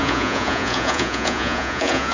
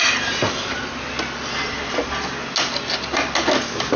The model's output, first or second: first